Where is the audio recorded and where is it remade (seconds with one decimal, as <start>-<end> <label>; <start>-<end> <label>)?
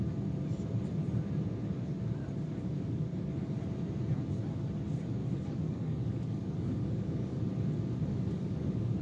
0.0-2.2 recorded; 2.2-3.5 remade; 3.5-5.2 recorded; 5.2-7.4 remade; 7.4-8.1 recorded; 8.1-9.0 remade